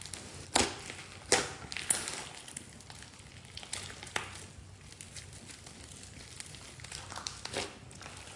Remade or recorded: recorded